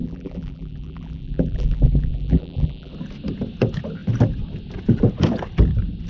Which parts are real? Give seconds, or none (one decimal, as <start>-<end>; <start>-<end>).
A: 2.9-6.1